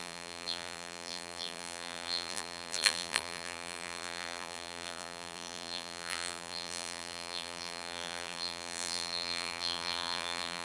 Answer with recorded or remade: remade